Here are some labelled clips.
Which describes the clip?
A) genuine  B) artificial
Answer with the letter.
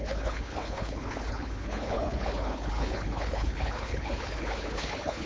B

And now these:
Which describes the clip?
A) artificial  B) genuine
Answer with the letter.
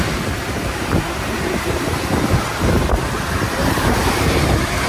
A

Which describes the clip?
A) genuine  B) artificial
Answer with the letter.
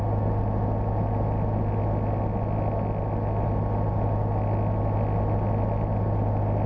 A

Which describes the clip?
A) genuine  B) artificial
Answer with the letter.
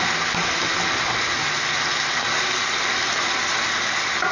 A